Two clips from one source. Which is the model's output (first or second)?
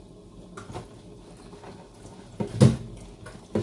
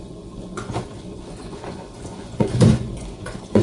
second